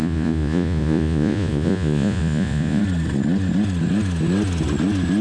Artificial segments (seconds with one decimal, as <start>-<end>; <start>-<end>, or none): 0.0-2.8